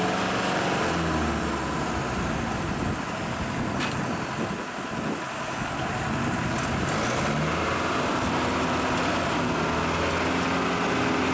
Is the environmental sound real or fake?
real